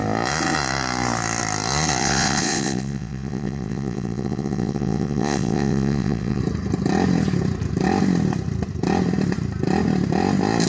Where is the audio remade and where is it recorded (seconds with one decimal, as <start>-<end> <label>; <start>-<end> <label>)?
0.0-2.0 recorded; 2.0-6.4 remade; 6.4-10.7 recorded